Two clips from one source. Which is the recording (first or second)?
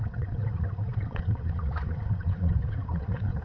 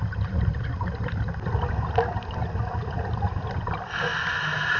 second